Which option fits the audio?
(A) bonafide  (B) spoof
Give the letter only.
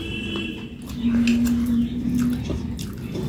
A